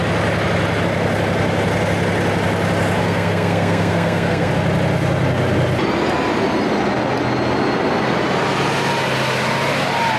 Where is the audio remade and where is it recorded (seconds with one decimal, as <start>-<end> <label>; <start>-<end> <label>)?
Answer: 0.0-3.0 recorded; 3.0-4.5 remade; 4.5-10.2 recorded